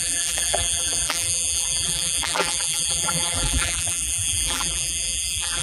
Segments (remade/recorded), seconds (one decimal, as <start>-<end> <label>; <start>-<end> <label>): 0.0-5.6 remade